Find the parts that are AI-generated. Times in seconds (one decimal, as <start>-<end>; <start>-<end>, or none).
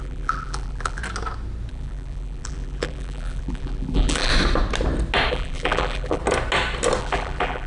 0.0-1.0; 1.7-4.3; 5.3-6.2; 7.0-7.7